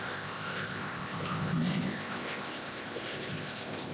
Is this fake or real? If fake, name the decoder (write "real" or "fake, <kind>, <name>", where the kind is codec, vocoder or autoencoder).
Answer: fake, codec, ZipCodec